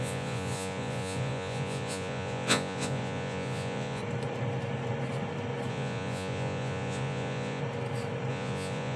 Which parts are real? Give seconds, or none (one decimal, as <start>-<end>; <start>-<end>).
4.0-5.7; 7.6-8.3